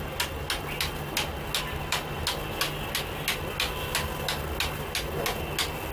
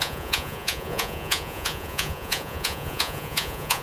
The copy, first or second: second